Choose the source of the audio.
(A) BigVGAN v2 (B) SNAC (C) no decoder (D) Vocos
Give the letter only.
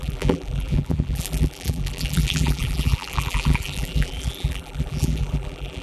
A